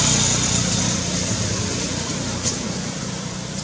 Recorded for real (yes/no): yes